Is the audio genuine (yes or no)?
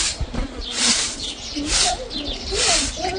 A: no